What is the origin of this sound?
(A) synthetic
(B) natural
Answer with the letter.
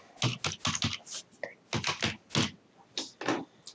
B